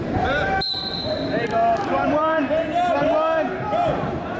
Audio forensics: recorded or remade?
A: remade